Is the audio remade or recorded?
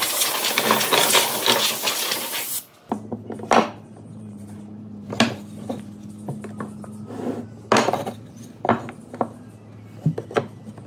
recorded